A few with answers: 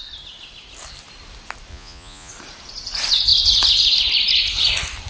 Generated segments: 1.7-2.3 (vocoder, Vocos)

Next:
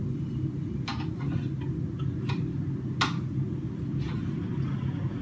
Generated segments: none

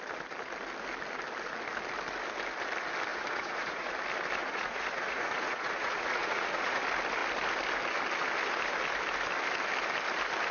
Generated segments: 3.1-3.9 (vocoder, Vocos); 4.4-6.8

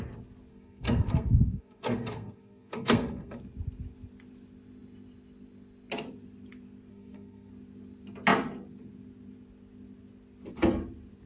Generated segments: 0.5-3.4 (codec, SNAC); 6.9-7.5

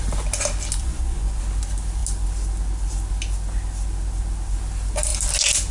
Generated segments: 0.8-1.4 (vocoder, Vocos)